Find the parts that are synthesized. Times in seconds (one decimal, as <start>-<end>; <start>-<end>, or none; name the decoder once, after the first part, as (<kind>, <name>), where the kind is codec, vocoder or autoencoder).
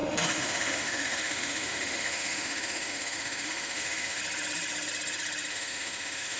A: 0.0-4.2 (autoencoder, DAC-VAE); 5.5-6.4